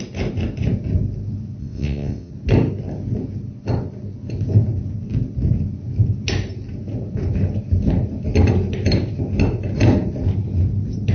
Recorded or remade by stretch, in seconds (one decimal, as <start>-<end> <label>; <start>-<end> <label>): 0.0-1.6 recorded; 1.6-2.3 remade; 2.3-11.1 recorded